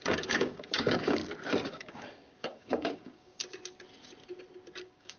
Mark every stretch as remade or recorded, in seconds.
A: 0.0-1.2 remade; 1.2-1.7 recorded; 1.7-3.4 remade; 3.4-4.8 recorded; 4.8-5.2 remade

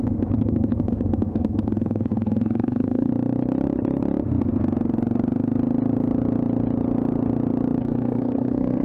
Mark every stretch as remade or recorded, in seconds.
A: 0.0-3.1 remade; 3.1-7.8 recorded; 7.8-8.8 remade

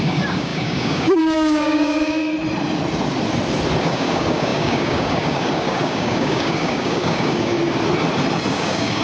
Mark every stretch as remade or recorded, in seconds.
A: 0.0-2.2 remade; 2.2-3.8 recorded; 3.8-7.6 remade; 7.6-8.5 recorded; 8.5-9.0 remade

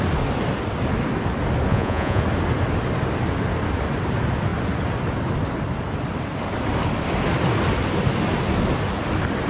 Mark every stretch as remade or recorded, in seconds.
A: 0.0-1.7 recorded; 1.7-2.2 remade; 2.2-9.5 recorded